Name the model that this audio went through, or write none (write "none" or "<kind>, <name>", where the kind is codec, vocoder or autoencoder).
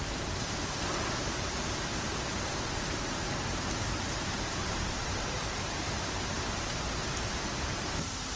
vocoder, BigVGAN v2